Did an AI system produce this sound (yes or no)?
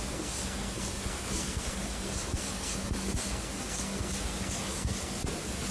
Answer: yes